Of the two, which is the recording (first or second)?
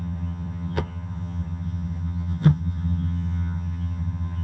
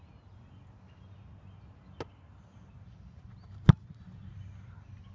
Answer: second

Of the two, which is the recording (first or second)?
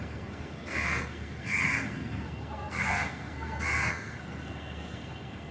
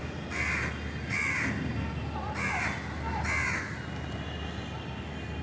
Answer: second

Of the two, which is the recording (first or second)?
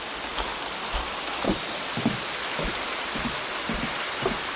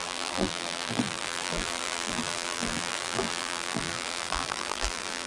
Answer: first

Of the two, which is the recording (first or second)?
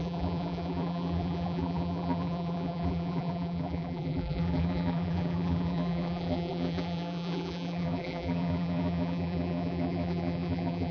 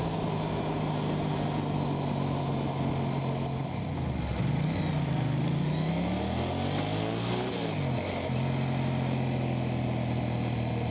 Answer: second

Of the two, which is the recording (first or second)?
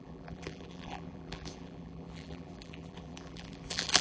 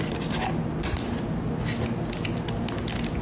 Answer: second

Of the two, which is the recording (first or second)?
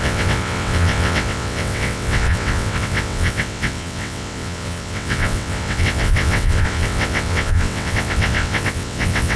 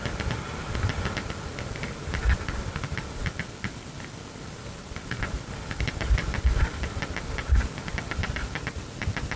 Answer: second